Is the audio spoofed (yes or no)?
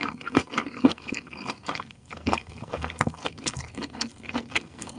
yes